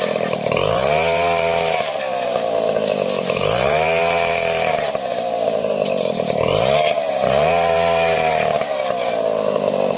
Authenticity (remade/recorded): remade